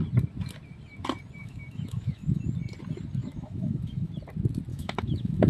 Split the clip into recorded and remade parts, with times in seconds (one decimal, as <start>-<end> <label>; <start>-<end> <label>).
0.0-1.4 recorded; 1.4-2.4 remade; 2.4-3.2 recorded; 3.2-4.1 remade; 4.1-4.7 recorded; 4.7-5.5 remade

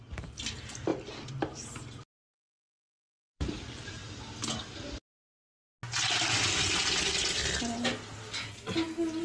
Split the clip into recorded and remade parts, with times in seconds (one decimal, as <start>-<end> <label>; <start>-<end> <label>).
0.0-4.0 remade; 4.0-9.2 recorded

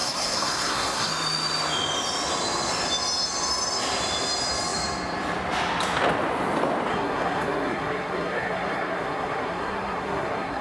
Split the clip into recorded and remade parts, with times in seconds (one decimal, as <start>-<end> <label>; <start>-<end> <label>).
0.0-1.1 remade; 1.1-6.9 recorded; 6.9-10.6 remade

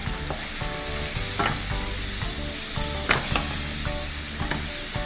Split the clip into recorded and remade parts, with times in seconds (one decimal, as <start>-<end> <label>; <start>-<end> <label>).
0.0-5.1 recorded

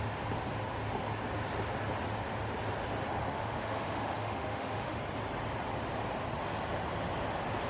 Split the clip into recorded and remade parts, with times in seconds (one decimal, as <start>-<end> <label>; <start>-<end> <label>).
0.0-3.3 recorded; 3.3-5.0 remade; 5.0-7.7 recorded

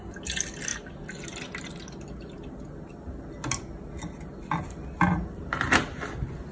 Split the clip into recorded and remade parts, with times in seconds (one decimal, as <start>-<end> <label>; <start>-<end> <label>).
0.0-6.5 recorded

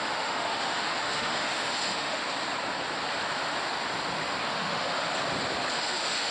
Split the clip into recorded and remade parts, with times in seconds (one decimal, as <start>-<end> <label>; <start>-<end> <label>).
0.0-2.2 remade; 2.2-4.5 recorded; 4.5-4.9 remade; 4.9-5.7 recorded; 5.7-6.3 remade